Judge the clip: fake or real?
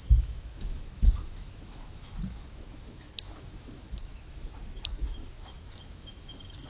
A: fake